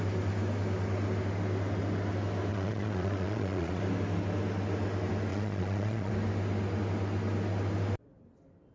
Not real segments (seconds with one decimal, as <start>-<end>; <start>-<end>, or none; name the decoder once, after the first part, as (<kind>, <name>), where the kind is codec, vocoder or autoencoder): 2.5-3.8 (vocoder, Vocos); 5.3-6.1